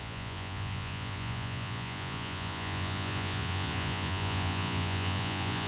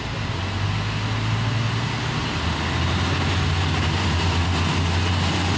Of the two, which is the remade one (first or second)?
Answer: first